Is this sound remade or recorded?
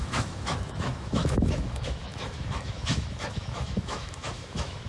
remade